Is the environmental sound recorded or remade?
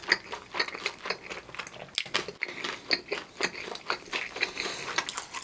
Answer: recorded